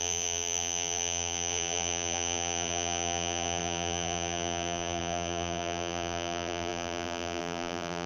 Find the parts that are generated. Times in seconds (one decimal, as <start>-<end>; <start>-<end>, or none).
0.0-8.1